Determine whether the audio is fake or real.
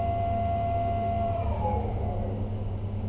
real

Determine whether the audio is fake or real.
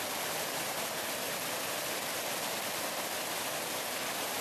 real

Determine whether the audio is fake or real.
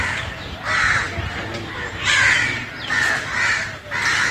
real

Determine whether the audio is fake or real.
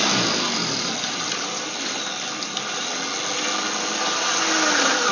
real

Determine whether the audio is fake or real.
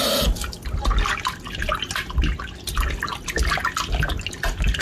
real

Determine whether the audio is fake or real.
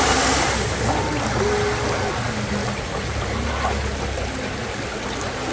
real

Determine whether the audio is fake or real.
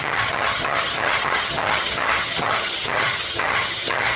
fake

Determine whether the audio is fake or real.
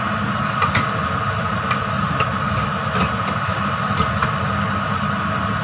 real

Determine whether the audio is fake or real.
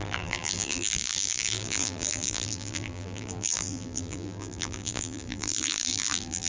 fake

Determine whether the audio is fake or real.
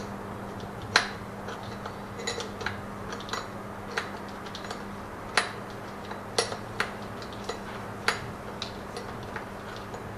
real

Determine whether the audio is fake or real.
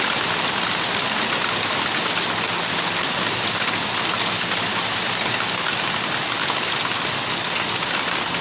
real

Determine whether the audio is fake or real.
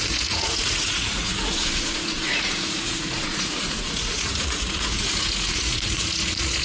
fake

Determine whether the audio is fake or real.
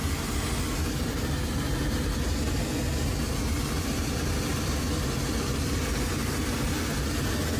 real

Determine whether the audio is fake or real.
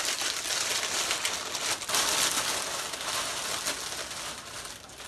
real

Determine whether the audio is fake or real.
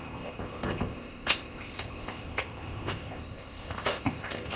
fake